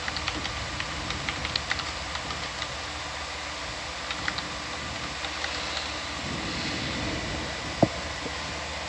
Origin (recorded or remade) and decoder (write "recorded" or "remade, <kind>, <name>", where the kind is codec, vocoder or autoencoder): recorded